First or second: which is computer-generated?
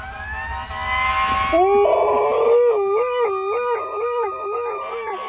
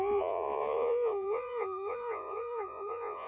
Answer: second